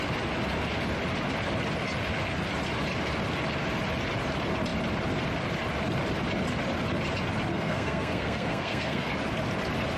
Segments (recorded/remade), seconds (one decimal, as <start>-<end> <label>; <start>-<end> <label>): 0.0-7.5 recorded; 7.5-9.1 remade; 9.1-10.0 recorded

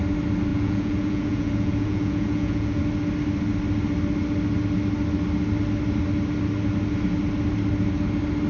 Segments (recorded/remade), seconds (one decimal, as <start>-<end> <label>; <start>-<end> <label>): 0.0-0.5 recorded; 0.5-2.8 remade; 2.8-8.5 recorded

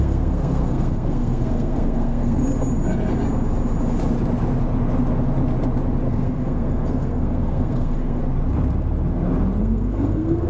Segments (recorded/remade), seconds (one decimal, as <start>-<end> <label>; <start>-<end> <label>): 0.0-2.4 remade; 2.4-6.1 recorded; 6.1-8.2 remade; 8.2-9.6 recorded; 9.6-10.5 remade

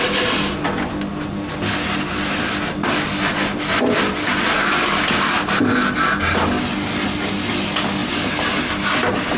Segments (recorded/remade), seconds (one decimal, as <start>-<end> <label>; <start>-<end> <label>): 0.0-9.4 recorded

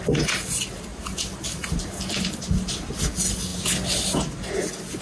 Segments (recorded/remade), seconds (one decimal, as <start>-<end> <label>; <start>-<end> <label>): 0.0-0.9 recorded; 0.9-2.4 remade; 2.4-5.0 recorded

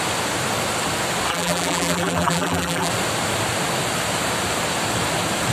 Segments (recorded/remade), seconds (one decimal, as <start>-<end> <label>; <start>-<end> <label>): 0.0-1.3 recorded; 1.3-2.9 remade; 2.9-5.5 recorded